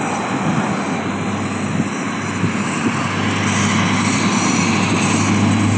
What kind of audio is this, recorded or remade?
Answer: recorded